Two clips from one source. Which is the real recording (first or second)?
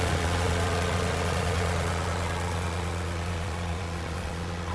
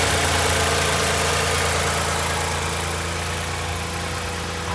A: second